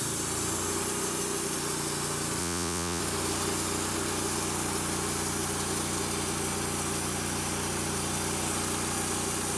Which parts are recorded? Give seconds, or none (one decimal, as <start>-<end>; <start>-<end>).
0.0-2.4; 3.0-9.6